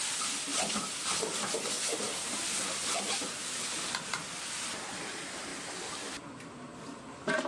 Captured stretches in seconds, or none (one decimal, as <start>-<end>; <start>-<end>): 0.0-0.5; 2.8-5.5; 6.1-7.5